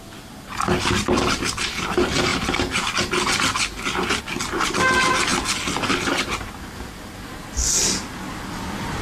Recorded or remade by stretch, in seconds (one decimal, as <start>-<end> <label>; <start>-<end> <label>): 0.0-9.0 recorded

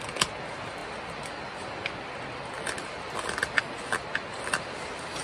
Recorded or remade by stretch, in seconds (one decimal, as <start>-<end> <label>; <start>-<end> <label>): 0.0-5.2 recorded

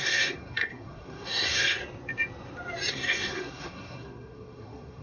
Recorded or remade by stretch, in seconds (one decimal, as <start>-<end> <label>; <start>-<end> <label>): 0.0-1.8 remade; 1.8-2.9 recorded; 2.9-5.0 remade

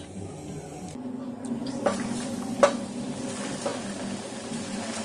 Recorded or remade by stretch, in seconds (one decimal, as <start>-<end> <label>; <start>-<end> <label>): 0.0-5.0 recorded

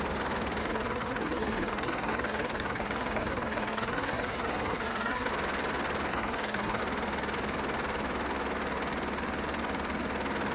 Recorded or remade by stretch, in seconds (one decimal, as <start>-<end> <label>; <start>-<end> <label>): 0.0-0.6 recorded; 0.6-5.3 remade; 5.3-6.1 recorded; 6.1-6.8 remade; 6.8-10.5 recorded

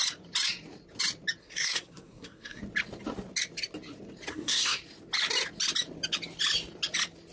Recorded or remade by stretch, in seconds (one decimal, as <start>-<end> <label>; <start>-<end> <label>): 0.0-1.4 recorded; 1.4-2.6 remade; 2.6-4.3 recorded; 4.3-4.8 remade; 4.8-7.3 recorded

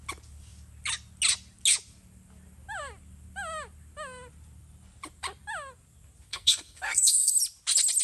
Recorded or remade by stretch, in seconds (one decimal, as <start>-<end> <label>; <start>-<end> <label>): 0.0-6.3 recorded; 6.3-7.3 remade; 7.3-8.0 recorded